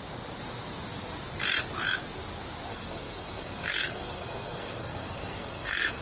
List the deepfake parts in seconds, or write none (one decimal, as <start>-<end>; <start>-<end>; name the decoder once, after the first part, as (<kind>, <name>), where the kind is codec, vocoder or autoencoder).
2.7-6.0 (codec, SNAC)